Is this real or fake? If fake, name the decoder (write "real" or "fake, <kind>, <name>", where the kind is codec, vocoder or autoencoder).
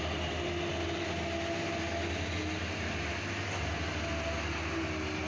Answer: real